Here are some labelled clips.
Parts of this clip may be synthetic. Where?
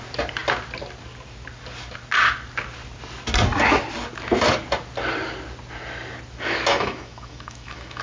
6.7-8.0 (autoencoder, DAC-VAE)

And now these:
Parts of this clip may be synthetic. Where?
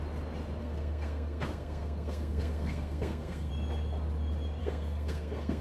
0.6-3.5 (codec, SNAC); 4.6-5.6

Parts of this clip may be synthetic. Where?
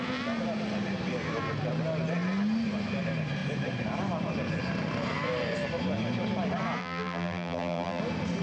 6.8-8.0 (vocoder, BigVGAN v2)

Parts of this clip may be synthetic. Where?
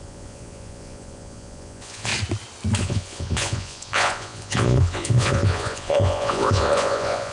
0.0-2.1 (vocoder, Vocos); 2.8-7.3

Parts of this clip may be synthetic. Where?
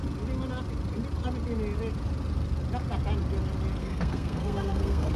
3.8-5.2 (codec, SNAC)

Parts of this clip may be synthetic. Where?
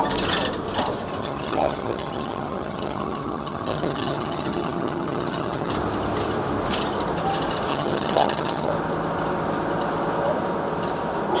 1.2-5.7 (vocoder, HiFi-GAN); 7.7-8.7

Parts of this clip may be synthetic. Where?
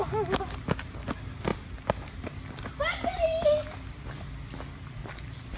none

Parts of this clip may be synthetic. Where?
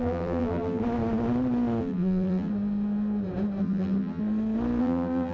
0.0-0.8 (vocoder, BigVGAN v2); 1.8-2.5; 3.6-4.2; 4.8-5.3